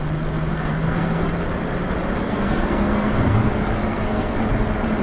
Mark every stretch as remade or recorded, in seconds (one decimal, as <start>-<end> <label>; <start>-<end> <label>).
0.0-0.5 recorded; 0.5-1.3 remade; 1.3-2.2 recorded; 2.2-4.4 remade; 4.4-5.0 recorded